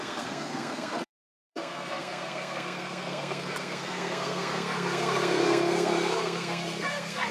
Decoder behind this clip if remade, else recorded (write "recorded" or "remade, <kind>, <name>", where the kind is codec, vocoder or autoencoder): remade, codec, SNAC